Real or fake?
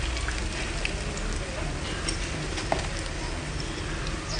real